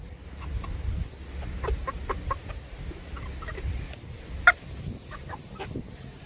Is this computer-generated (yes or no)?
no